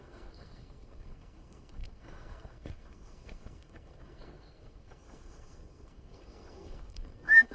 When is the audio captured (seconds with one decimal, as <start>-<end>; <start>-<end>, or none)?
none